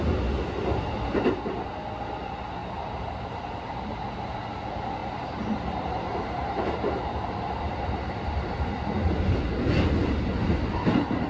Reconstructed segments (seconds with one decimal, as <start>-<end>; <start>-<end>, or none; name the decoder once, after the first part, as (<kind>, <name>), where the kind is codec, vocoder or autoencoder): 2.6-4.4 (vocoder, BigVGAN v2); 5.0-8.9